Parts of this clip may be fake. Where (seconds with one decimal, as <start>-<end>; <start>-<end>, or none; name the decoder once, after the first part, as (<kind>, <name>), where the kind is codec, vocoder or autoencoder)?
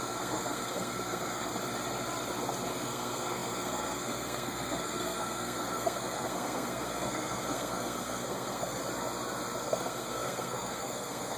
0.0-1.5 (codec, SNAC); 2.7-8.8; 9.6-11.4